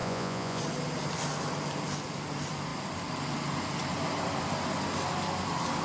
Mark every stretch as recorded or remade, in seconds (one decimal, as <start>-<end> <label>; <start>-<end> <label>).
0.0-0.6 remade; 0.6-5.8 recorded